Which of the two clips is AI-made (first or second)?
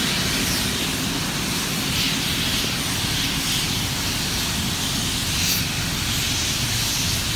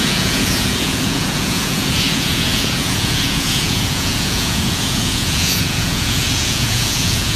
second